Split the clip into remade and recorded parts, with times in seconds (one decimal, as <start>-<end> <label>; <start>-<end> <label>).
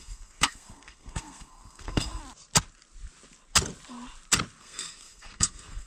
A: 0.0-2.2 remade; 2.2-4.6 recorded; 4.6-5.9 remade